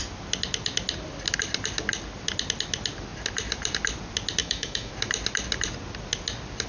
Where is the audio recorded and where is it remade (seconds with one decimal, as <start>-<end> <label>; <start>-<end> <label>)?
0.0-4.4 recorded; 4.4-4.9 remade; 4.9-6.7 recorded